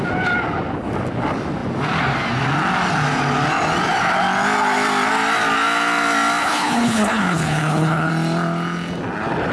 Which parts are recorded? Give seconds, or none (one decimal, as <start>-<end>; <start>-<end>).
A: 0.0-6.4; 8.1-9.5